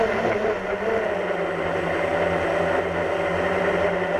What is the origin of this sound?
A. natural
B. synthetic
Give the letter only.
A